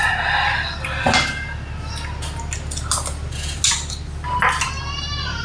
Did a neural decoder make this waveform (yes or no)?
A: no